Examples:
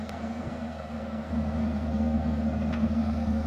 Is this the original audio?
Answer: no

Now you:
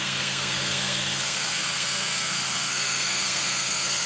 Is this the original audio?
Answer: no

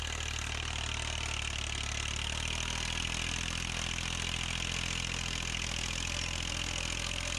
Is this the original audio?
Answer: yes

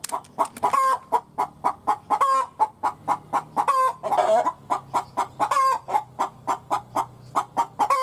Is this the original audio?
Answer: yes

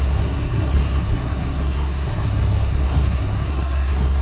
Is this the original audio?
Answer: no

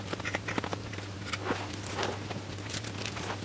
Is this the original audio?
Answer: yes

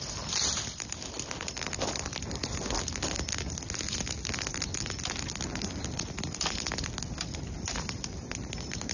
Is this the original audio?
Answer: yes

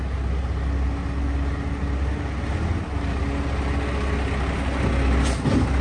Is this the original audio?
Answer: yes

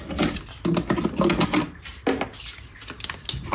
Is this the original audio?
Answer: yes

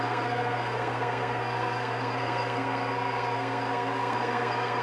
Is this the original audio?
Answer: no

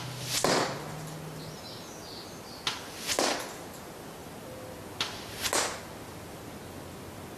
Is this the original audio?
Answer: yes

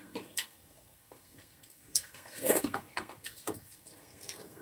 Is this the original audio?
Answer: no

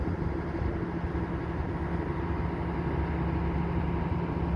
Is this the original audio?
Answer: yes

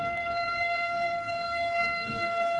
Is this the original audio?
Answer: no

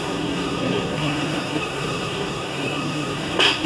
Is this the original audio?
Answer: no